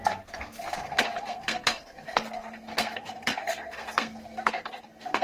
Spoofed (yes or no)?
yes